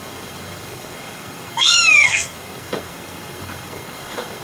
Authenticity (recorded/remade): remade